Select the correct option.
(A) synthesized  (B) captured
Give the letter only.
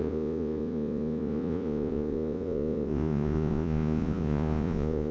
A